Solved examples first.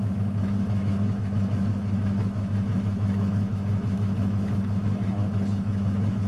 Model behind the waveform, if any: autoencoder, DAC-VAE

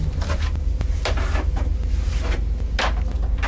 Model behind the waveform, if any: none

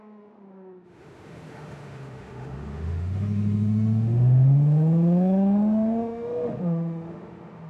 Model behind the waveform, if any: autoencoder, DAC-VAE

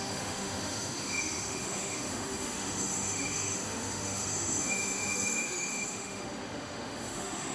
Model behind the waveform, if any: autoencoder, DAC-VAE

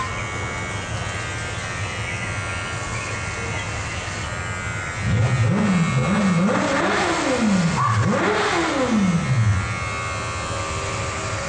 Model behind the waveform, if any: none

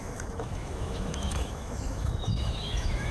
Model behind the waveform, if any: autoencoder, DAC-VAE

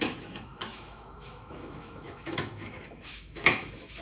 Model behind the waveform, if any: autoencoder, DAC-VAE